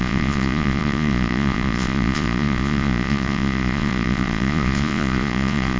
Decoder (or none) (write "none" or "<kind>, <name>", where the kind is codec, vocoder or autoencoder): vocoder, Vocos